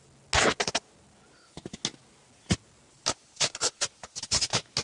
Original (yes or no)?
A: yes